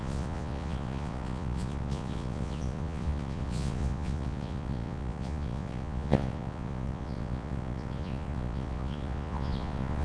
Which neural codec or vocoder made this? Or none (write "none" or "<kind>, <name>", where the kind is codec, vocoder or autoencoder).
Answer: vocoder, Vocos